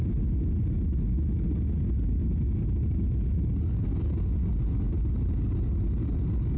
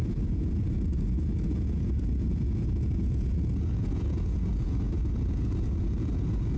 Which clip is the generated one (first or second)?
second